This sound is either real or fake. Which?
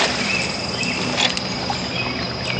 real